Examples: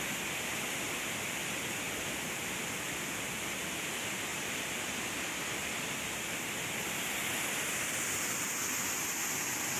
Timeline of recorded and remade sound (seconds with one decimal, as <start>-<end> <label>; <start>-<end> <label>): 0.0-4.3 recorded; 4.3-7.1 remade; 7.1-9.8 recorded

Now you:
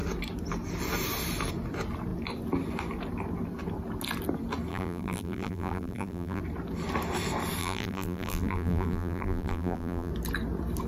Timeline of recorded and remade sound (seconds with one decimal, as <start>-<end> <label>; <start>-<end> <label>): 0.0-4.7 recorded; 4.7-6.4 remade; 6.4-7.6 recorded; 7.6-10.1 remade; 10.1-10.9 recorded

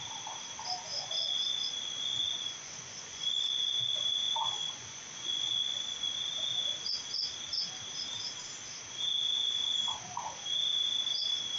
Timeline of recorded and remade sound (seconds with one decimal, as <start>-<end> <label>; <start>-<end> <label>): 0.0-0.9 recorded; 0.9-6.1 remade; 6.1-11.6 recorded

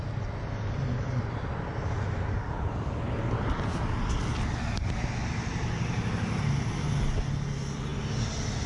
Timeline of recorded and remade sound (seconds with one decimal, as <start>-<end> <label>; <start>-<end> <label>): 0.0-8.7 recorded

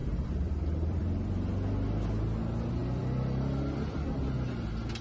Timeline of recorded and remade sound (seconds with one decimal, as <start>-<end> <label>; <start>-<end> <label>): 0.0-1.3 remade; 1.3-5.0 recorded